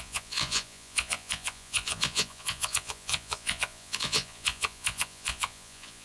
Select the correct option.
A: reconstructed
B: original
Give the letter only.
A